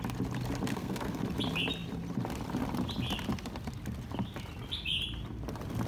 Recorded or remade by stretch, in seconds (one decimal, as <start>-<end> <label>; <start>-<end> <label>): 0.0-0.7 recorded; 0.7-1.2 remade; 1.2-5.9 recorded